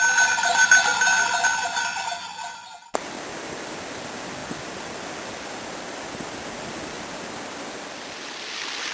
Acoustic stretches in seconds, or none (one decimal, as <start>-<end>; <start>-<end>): 0.0-8.9